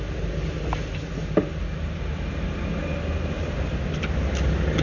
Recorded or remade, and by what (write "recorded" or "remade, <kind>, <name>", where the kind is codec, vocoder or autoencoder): recorded